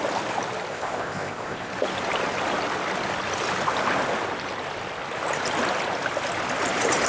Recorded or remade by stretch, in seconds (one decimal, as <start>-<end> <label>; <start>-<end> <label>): 0.0-0.7 recorded; 0.7-1.7 remade; 1.7-7.1 recorded